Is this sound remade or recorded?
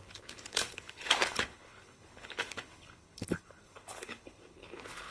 remade